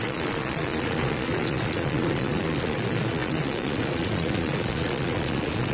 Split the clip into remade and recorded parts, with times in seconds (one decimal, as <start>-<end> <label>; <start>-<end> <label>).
0.0-5.7 remade